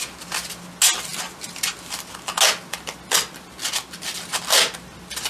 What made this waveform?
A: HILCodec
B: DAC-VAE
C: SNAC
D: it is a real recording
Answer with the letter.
D